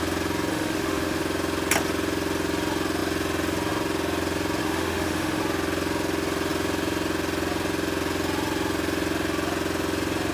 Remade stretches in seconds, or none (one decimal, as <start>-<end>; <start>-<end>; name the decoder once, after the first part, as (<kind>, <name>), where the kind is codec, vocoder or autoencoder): 0.5-1.2 (autoencoder, DAC-VAE); 4.6-5.4